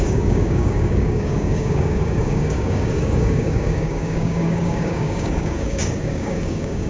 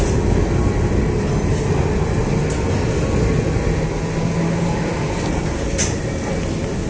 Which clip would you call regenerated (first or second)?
first